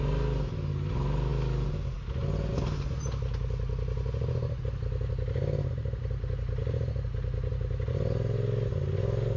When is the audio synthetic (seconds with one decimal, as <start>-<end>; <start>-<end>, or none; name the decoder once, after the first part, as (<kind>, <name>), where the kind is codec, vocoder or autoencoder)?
none